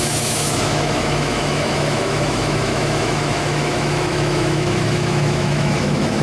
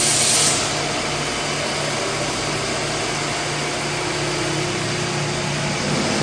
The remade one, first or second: first